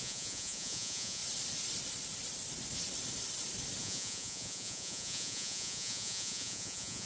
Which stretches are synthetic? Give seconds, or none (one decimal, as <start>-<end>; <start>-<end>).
0.0-1.2; 3.8-7.1